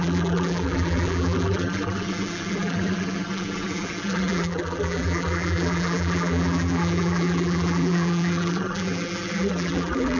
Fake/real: fake